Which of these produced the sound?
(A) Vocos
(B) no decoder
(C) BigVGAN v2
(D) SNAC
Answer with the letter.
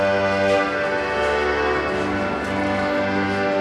B